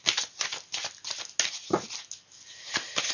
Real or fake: real